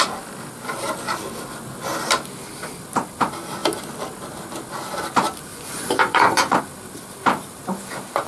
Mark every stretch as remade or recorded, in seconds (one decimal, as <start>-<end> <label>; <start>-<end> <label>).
0.0-5.5 recorded; 5.5-6.6 remade; 6.6-8.3 recorded